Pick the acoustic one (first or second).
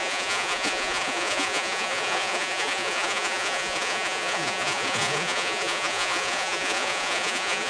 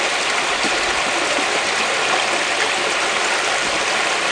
second